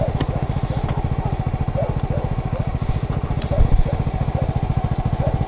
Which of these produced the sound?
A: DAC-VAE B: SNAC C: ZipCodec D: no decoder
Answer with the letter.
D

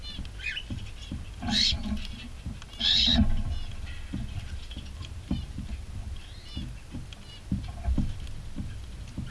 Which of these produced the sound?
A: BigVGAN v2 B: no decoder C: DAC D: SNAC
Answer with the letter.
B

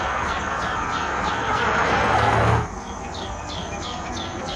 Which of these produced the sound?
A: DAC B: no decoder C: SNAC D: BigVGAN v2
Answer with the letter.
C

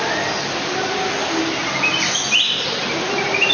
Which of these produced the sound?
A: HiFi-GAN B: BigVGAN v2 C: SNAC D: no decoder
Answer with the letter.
D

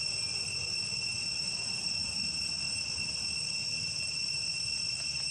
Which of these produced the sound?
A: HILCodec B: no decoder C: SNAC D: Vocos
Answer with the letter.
B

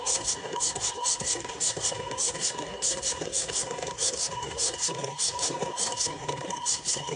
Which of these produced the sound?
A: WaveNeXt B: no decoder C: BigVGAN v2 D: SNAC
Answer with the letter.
D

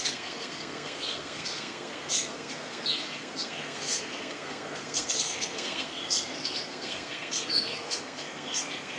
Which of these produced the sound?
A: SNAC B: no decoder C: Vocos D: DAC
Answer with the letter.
A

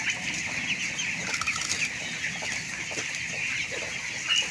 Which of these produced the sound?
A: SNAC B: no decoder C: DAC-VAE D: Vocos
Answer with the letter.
B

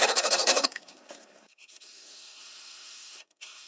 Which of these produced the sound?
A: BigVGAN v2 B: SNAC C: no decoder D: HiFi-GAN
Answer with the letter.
B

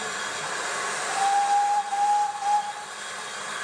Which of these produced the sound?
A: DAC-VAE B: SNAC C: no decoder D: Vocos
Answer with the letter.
C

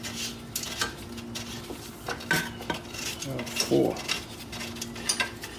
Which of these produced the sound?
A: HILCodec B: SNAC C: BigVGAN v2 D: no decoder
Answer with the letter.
D